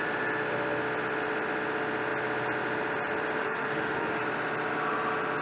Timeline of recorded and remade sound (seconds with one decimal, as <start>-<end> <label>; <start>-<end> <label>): 0.0-3.4 recorded; 3.4-4.2 remade; 4.2-5.4 recorded